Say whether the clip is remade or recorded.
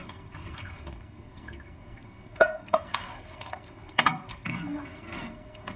remade